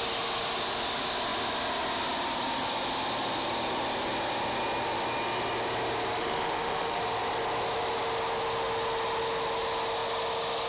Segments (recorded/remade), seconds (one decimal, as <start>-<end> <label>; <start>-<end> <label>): 0.0-6.2 recorded; 6.2-7.0 remade; 7.0-10.7 recorded